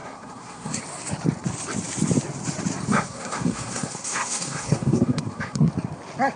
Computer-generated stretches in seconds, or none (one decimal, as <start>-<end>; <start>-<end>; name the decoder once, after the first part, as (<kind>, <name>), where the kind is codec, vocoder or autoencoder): 0.0-0.8 (codec, SNAC); 2.9-5.7